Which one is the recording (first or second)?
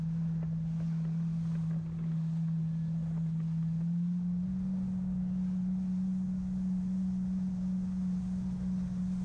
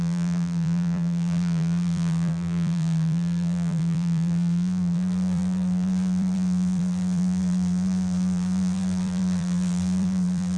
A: first